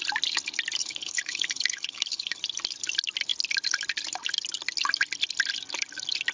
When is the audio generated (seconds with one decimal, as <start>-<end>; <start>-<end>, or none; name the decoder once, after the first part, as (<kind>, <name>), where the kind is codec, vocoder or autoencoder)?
0.8-2.4 (codec, HILCodec)